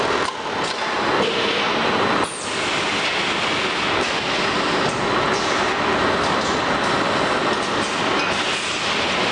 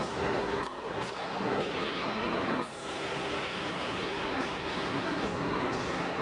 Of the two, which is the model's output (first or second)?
second